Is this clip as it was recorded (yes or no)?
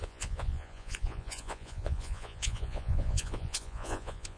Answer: no